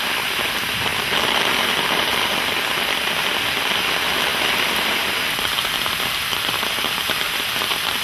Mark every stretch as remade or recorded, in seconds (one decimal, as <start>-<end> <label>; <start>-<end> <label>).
0.0-8.0 recorded